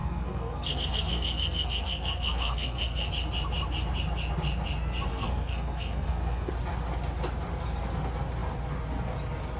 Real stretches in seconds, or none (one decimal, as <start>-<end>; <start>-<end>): 3.1-5.1; 6.5-9.6